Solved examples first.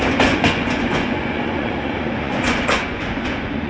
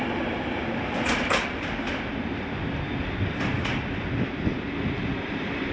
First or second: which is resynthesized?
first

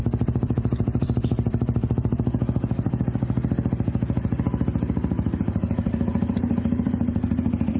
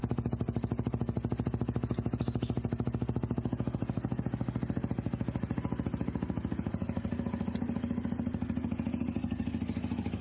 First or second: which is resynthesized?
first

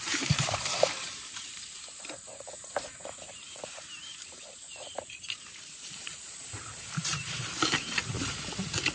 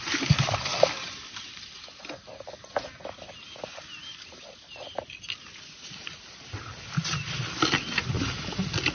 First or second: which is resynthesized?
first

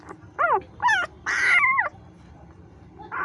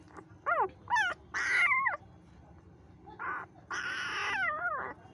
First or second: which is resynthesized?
first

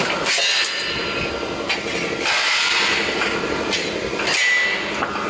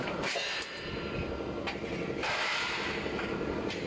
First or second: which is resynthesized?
second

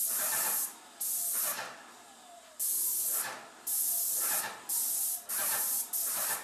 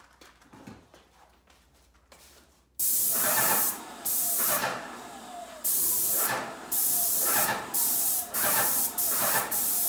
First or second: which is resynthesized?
second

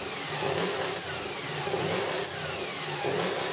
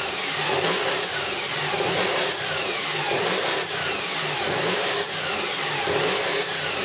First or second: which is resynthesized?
second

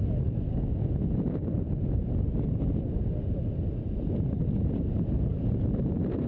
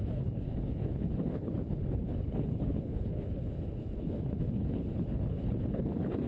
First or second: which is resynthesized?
second